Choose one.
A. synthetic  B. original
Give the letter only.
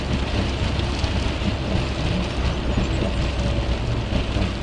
B